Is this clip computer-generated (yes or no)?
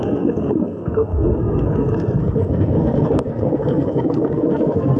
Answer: yes